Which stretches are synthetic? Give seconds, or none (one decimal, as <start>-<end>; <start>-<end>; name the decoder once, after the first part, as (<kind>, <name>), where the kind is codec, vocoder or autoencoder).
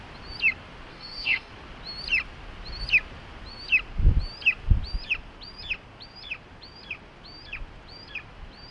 0.9-1.5 (codec, SNAC)